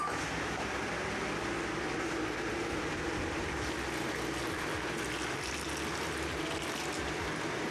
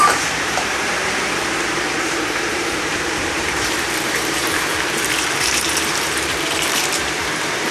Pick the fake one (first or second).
second